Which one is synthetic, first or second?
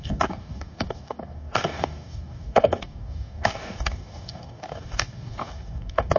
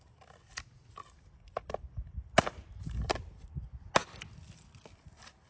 first